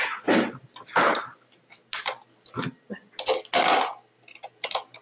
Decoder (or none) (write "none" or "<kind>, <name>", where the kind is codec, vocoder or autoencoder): none